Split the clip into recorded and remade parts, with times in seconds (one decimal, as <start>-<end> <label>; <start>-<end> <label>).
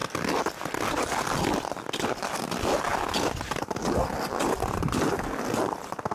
0.0-6.1 recorded